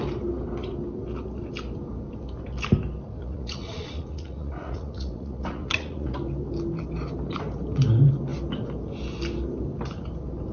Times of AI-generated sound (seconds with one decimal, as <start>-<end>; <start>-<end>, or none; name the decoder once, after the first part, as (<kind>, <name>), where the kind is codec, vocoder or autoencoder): 3.2-6.2 (vocoder, Vocos)

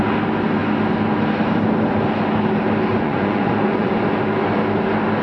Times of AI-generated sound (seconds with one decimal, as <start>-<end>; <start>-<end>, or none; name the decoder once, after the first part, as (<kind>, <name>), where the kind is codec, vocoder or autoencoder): 2.9-3.9 (vocoder, Vocos)

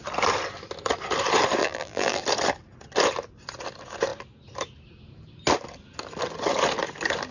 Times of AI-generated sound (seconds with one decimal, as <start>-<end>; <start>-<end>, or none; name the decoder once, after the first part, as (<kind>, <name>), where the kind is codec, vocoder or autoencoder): 1.6-2.2 (vocoder, BigVGAN v2)

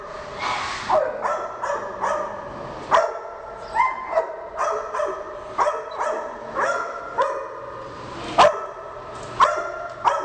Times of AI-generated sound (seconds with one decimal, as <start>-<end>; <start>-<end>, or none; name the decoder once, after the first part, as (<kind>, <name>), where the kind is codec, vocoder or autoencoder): 6.4-7.0 (autoencoder, DAC-VAE)

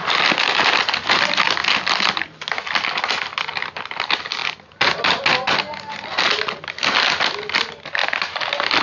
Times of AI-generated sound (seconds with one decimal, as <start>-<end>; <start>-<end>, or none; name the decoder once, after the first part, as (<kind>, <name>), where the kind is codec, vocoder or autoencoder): none

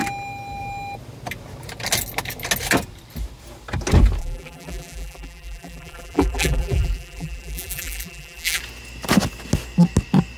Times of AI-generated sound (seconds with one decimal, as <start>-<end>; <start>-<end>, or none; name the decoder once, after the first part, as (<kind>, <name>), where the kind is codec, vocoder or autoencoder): 4.2-8.6 (vocoder, BigVGAN v2)

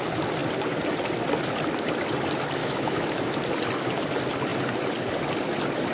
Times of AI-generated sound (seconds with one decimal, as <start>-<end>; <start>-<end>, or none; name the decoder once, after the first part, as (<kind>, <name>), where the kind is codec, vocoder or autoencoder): 2.6-3.4 (autoencoder, DAC-VAE)

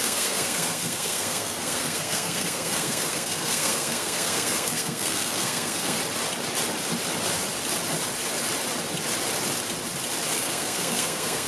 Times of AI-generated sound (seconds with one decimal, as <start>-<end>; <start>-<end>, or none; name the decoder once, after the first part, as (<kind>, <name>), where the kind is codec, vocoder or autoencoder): 0.0-6.0 (codec, SNAC); 10.3-11.5